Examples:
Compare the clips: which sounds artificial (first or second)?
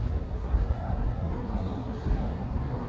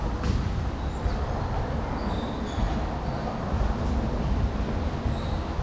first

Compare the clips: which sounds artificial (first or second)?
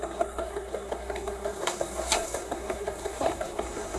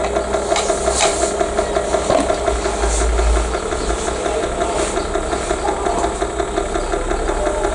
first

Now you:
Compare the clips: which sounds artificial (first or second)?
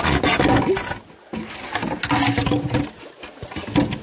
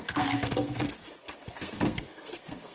second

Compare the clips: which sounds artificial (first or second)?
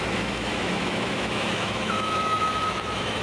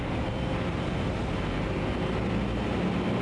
first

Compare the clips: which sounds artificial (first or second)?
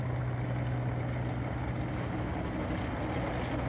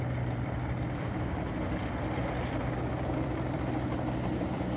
second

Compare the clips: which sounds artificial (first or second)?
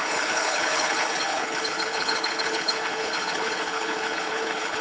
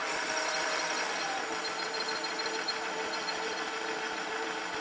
first